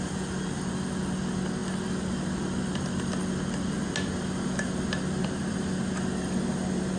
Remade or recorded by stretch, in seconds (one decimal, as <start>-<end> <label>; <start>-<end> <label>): 0.0-7.0 recorded

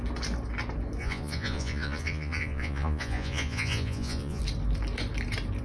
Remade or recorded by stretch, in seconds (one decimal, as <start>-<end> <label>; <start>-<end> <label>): 0.0-1.0 recorded; 1.0-4.4 remade; 4.4-5.6 recorded

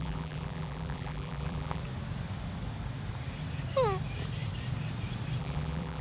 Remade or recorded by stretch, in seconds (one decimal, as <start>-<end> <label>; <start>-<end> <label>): 0.0-1.8 remade; 1.8-5.4 recorded; 5.4-6.0 remade

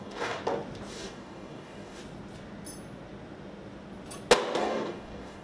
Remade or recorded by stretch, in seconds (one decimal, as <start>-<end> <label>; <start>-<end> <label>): 0.0-0.4 remade; 0.4-0.9 recorded; 0.9-2.0 remade; 2.0-4.6 recorded; 4.6-5.4 remade

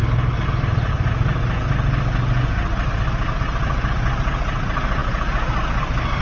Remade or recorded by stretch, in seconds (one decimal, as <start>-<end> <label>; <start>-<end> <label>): 0.0-6.2 recorded